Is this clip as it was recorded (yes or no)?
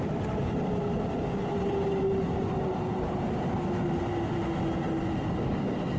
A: yes